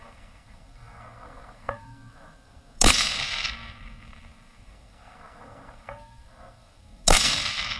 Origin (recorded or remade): remade